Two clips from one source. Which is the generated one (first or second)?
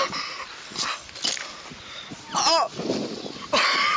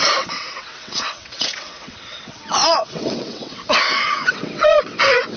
second